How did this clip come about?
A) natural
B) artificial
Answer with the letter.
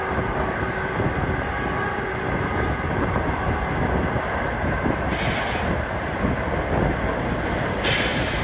A